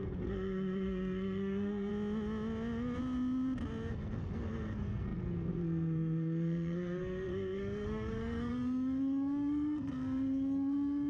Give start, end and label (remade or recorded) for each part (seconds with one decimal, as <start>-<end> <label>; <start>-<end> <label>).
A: 0.0-1.9 remade; 1.9-3.9 recorded; 3.9-11.1 remade